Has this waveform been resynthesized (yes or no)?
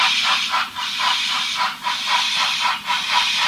yes